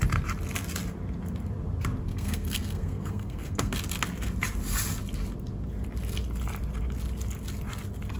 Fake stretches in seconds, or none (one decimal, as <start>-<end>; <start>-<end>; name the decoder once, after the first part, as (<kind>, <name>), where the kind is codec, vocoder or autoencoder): 2.1-3.7 (codec, SNAC)